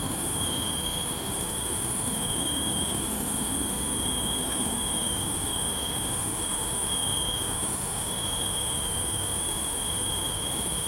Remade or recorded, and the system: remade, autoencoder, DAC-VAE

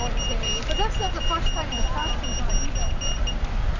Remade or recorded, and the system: recorded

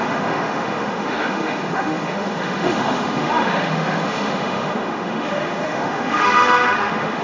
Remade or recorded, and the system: remade, autoencoder, DAC-VAE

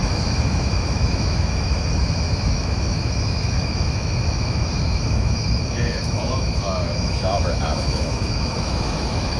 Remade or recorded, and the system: remade, autoencoder, DAC-VAE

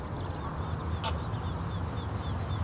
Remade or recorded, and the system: recorded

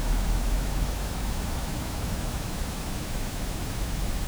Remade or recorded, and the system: remade, autoencoder, DAC-VAE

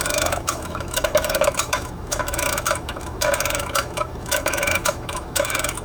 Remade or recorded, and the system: remade, autoencoder, DAC-VAE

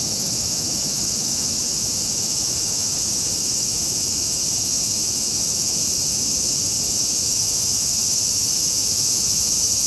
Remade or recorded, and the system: remade, autoencoder, DAC-VAE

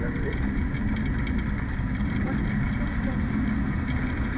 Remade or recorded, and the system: recorded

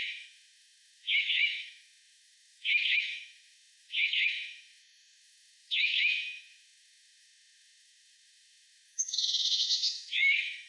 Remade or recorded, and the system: remade, autoencoder, DAC-VAE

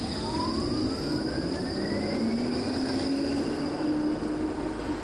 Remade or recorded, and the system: recorded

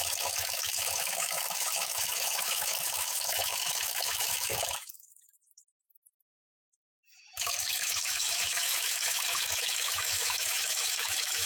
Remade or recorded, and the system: remade, autoencoder, DAC-VAE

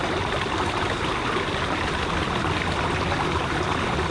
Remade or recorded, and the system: recorded